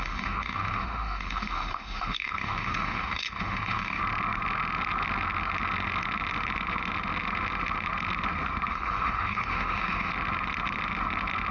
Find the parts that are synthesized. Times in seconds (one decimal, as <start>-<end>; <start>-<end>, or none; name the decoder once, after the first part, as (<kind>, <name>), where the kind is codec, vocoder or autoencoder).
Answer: 0.0-4.0 (autoencoder, DAC-VAE); 8.7-10.1